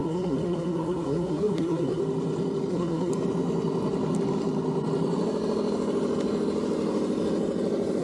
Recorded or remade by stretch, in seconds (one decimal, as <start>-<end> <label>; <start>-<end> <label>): 0.0-2.0 remade; 2.0-2.7 recorded; 2.7-3.1 remade; 3.1-8.0 recorded